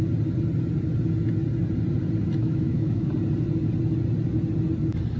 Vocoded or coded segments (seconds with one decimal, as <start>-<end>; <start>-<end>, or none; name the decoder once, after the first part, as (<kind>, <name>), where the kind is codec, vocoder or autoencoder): 2.4-3.1 (autoencoder, DAC-VAE)